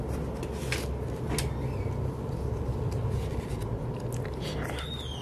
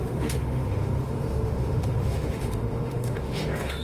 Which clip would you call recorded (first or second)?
first